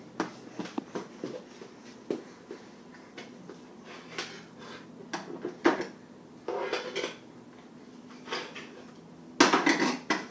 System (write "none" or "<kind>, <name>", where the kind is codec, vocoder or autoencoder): none